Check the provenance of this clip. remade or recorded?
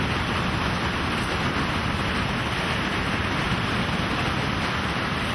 recorded